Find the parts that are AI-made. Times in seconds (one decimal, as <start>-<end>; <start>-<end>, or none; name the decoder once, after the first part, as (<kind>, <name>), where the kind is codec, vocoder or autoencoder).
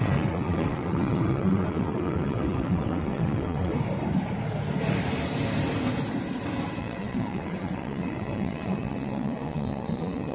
0.0-3.7 (vocoder, WaveNeXt); 6.8-10.3